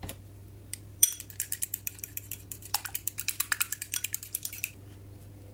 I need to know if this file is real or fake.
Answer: fake